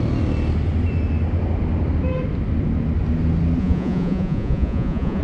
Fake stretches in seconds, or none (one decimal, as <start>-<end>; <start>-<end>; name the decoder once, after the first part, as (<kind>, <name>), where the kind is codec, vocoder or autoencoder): 3.6-5.2 (vocoder, Vocos)

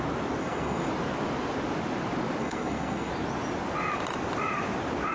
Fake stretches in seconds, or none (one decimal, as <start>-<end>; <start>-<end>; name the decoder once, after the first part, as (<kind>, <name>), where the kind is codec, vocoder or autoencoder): 0.4-0.9 (codec, SNAC); 2.4-3.1

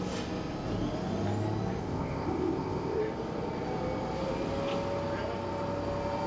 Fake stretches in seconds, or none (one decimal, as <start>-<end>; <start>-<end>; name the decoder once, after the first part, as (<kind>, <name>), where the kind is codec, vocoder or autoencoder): 1.8-3.0 (codec, ZipCodec)

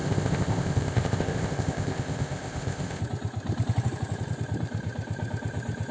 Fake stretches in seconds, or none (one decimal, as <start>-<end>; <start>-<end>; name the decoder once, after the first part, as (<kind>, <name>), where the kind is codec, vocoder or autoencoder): 0.0-3.0 (codec, ZipCodec)

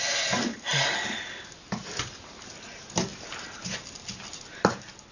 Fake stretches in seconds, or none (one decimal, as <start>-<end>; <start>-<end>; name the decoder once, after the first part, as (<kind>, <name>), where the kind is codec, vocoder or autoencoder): 0.7-1.6 (vocoder, BigVGAN v2)

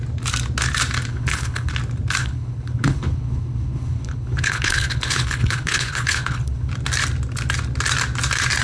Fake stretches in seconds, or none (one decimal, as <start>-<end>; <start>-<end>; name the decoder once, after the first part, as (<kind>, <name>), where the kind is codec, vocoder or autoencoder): 1.1-1.7 (codec, HILCodec); 2.2-6.7